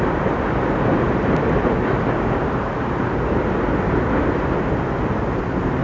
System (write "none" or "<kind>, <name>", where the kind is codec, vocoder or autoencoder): none